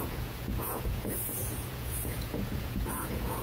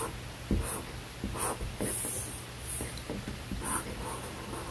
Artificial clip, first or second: first